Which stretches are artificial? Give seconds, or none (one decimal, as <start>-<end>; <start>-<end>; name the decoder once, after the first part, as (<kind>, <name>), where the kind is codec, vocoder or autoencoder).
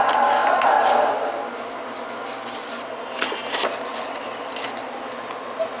none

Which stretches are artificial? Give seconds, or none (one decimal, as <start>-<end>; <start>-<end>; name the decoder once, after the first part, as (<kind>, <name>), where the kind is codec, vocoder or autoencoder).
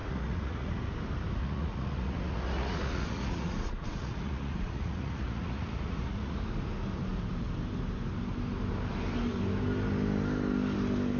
0.0-0.8 (vocoder, Vocos); 1.4-6.4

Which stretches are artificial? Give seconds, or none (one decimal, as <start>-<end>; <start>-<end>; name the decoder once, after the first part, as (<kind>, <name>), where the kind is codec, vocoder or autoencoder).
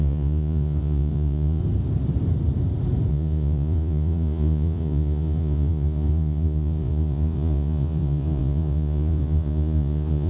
0.0-1.6 (vocoder, Vocos); 3.1-10.3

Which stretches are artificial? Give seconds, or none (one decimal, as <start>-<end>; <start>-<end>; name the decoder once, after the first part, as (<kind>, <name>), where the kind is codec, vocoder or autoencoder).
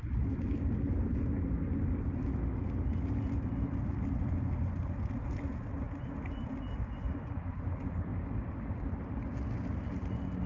none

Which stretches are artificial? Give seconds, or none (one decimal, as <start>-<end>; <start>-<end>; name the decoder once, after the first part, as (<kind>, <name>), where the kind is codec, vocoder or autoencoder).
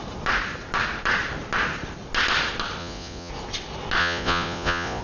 2.8-3.3 (vocoder, Vocos); 4.0-5.0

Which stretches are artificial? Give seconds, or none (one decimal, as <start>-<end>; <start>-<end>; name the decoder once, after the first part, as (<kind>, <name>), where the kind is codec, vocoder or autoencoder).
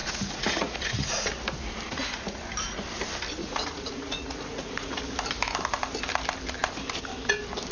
0.0-1.3 (vocoder, Vocos); 1.9-2.4; 3.4-5.0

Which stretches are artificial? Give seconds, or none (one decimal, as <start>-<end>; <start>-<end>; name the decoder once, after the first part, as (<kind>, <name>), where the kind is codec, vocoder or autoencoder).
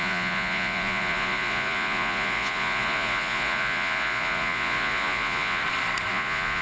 0.0-5.6 (vocoder, Vocos); 6.1-6.6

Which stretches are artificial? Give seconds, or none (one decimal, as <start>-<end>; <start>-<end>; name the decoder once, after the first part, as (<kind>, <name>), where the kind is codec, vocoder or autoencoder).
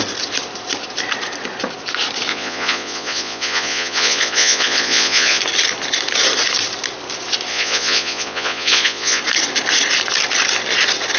2.3-5.4 (vocoder, Vocos); 7.5-9.2